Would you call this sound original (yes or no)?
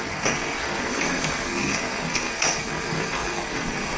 no